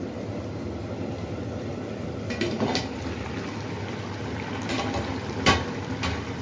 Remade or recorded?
remade